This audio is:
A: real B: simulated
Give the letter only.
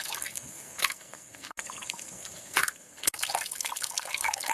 B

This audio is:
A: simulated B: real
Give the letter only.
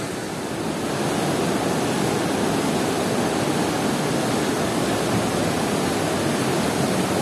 B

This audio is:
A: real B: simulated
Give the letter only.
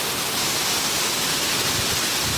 B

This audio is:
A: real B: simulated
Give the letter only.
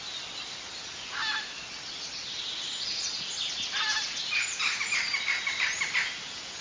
A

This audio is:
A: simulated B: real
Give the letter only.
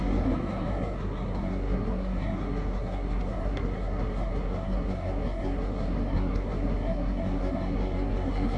A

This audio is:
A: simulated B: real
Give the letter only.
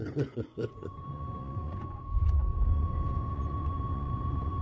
A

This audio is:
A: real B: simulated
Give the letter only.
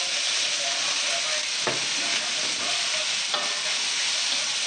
A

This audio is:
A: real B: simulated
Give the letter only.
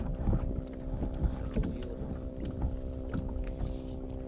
A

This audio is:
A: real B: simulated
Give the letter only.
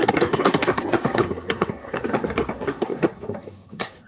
B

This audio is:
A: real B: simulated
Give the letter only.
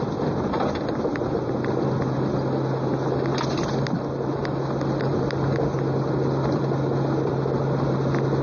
A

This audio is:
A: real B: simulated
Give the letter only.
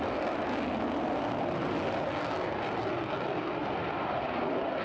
A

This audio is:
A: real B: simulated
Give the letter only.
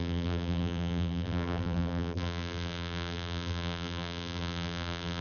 B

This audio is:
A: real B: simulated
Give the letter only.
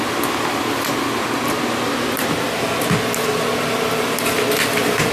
A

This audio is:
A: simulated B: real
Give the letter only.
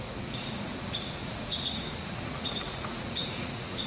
A